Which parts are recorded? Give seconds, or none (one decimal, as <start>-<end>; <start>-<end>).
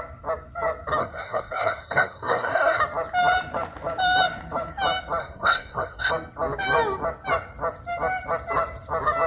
0.0-1.0; 2.8-5.2; 6.1-9.3